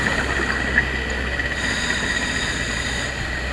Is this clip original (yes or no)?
yes